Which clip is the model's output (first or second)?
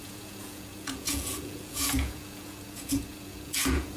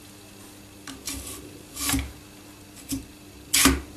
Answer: first